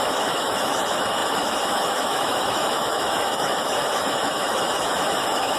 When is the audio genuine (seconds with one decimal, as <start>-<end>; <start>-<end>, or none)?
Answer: none